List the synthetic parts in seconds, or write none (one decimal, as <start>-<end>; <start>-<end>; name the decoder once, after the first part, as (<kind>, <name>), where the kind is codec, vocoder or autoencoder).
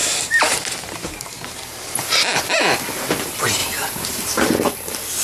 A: 0.0-2.4 (vocoder, BigVGAN v2); 3.6-4.4